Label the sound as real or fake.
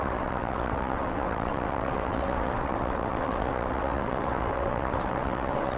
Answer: fake